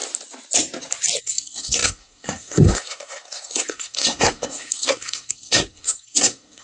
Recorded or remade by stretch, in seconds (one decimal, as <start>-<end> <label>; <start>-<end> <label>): 0.0-1.2 recorded; 1.2-6.6 remade